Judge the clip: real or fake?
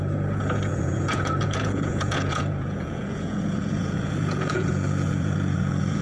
fake